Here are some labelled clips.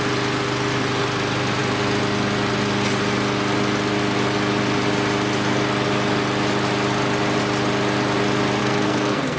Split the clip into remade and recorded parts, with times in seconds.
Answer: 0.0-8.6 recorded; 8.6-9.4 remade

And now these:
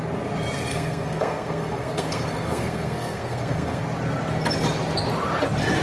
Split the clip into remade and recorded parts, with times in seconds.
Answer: 0.0-0.7 recorded; 0.7-3.8 remade; 3.8-5.8 recorded

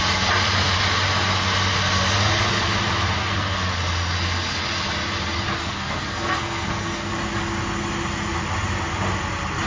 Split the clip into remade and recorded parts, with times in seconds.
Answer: 0.0-3.2 recorded; 3.2-3.7 remade; 3.7-5.6 recorded; 5.6-7.1 remade; 7.1-9.7 recorded